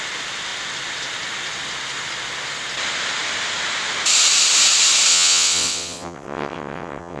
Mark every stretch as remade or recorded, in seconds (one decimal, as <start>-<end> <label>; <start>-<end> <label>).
0.0-5.1 recorded; 5.1-7.2 remade